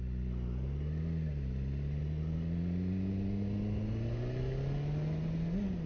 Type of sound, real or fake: real